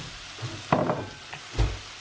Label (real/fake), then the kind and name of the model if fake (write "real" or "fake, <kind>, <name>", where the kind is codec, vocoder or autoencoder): real